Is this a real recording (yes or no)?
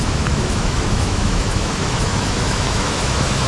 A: no